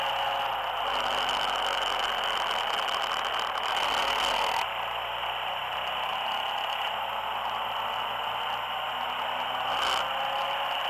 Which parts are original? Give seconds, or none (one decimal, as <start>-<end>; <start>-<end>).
0.0-10.9